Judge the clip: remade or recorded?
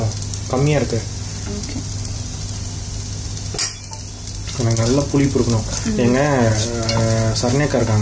recorded